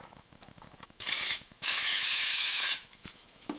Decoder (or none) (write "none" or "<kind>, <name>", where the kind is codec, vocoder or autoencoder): autoencoder, DAC-VAE